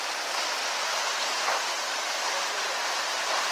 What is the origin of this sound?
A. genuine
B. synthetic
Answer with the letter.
A